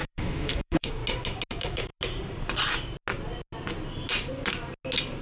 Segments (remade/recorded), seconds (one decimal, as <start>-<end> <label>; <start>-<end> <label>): 0.0-1.0 remade; 1.0-1.5 recorded; 1.5-1.9 remade; 1.9-5.2 recorded